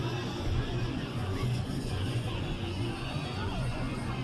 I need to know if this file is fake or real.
fake